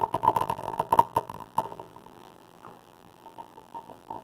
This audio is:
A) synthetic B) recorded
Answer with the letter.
A